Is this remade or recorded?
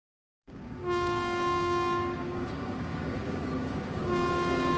remade